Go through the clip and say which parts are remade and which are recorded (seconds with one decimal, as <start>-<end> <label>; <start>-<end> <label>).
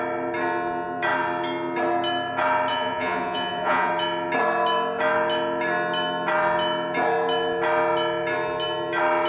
0.0-2.7 recorded; 2.7-3.9 remade; 3.9-9.3 recorded